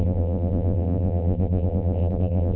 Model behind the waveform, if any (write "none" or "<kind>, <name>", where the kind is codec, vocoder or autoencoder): vocoder, BigVGAN v2